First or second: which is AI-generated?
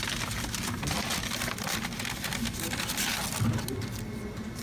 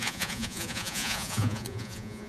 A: second